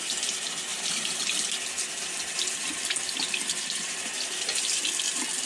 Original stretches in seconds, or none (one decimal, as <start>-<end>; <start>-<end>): 0.0-5.5